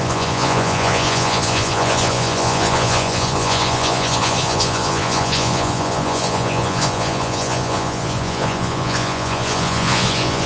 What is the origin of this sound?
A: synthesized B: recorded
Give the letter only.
A